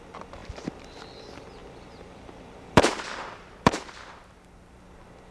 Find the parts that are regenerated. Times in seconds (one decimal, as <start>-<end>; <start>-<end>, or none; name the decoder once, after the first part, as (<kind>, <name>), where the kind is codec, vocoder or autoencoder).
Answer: 0.0-5.3 (vocoder, BigVGAN v2)